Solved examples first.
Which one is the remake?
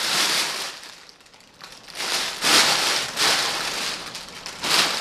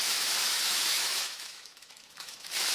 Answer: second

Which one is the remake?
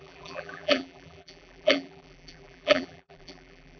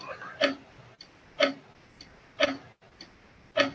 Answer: first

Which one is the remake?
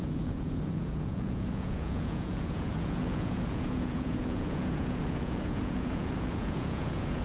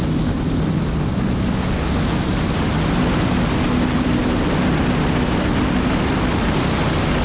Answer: first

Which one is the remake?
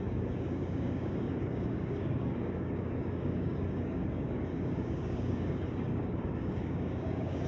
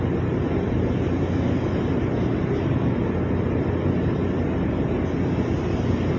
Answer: first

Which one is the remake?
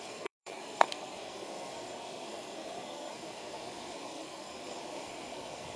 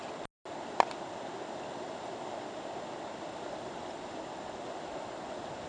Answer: first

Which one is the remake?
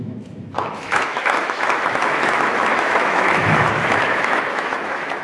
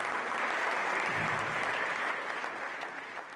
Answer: first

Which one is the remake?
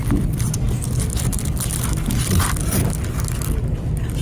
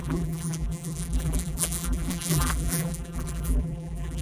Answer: second